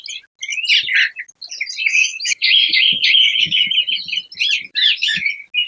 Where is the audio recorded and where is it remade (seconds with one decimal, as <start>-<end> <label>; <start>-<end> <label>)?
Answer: 0.0-1.8 recorded; 1.8-3.8 remade; 3.8-4.7 recorded; 4.7-5.3 remade; 5.3-5.7 recorded